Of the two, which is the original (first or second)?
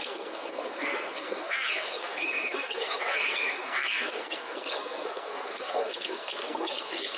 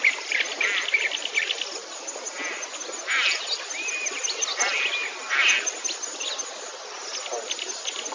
second